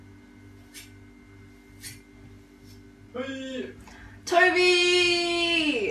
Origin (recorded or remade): recorded